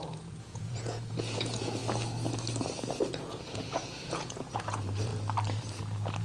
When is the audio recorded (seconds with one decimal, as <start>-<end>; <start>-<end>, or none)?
1.8-3.1; 5.1-6.2